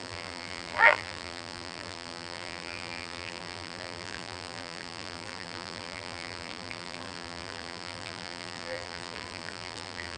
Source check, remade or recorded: remade